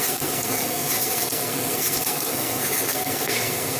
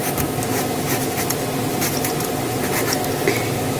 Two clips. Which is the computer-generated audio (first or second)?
first